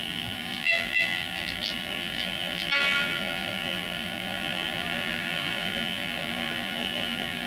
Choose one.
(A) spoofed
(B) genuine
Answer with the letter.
A